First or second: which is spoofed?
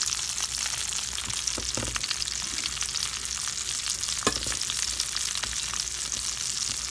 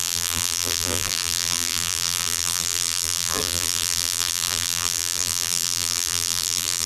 second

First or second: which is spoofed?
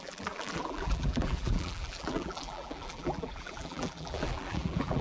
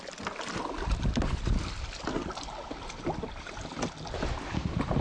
first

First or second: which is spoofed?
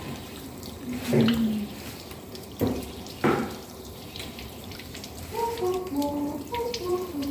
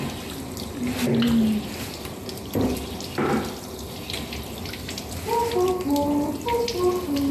first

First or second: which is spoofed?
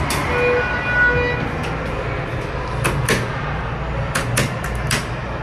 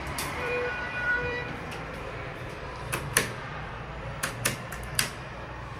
second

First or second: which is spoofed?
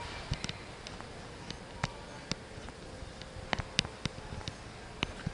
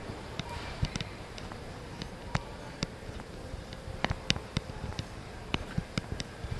second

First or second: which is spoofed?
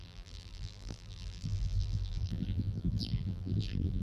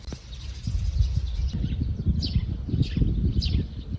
first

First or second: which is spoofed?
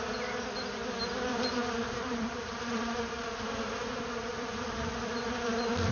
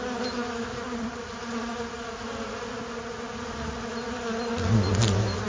first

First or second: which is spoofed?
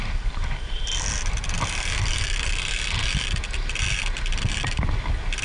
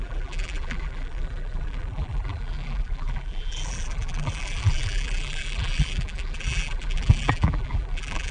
second